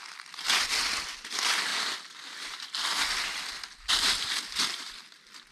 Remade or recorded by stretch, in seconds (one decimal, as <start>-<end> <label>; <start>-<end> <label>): 0.0-5.5 recorded

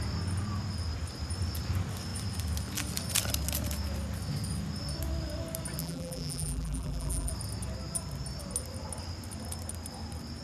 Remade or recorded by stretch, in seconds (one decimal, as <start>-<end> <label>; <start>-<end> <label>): 0.0-5.8 recorded; 5.8-7.3 remade; 7.3-10.4 recorded